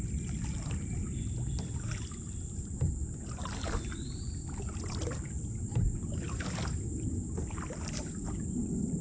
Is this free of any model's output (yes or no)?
yes